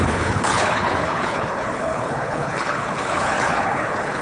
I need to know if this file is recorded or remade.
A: remade